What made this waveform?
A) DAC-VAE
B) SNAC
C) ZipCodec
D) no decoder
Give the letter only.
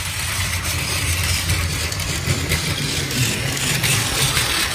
D